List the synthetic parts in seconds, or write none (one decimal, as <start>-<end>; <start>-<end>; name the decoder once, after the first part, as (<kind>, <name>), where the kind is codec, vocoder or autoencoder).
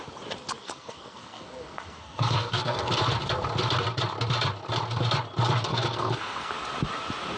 0.6-3.0 (codec, SNAC); 5.7-6.5